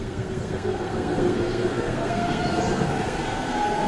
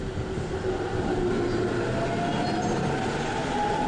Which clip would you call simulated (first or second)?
first